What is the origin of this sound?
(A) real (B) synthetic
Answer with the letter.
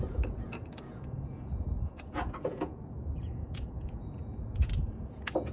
B